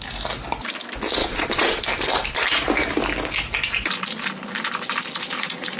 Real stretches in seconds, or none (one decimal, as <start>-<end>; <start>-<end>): 0.0-1.2; 1.8-5.8

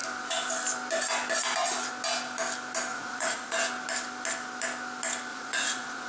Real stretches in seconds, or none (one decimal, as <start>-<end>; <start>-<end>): 0.0-2.9; 3.5-5.3